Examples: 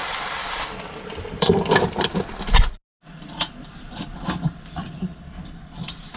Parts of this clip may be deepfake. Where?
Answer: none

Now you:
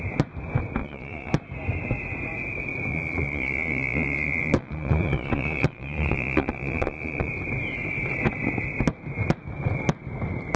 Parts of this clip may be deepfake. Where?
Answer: 0.8-1.3 (vocoder, Vocos); 2.9-7.3

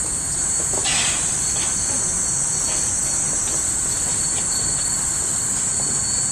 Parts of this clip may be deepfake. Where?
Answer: 3.4-5.5 (vocoder, BigVGAN v2)

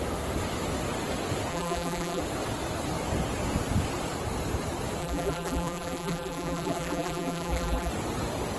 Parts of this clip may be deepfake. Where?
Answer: 1.5-2.2 (vocoder, BigVGAN v2); 5.0-7.9

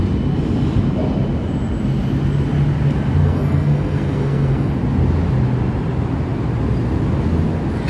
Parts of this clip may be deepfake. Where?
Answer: 3.2-4.7 (codec, SNAC)

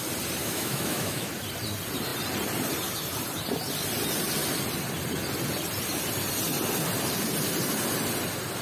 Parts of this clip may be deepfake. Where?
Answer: 0.4-1.3 (autoencoder, DAC-VAE)

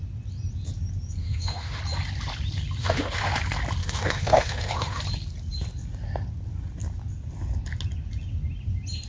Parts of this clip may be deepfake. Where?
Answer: 1.2-1.8 (autoencoder, DAC-VAE); 2.8-3.3; 3.8-5.0

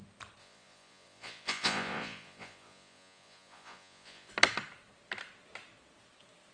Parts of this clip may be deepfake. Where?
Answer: 0.4-4.3 (vocoder, Vocos)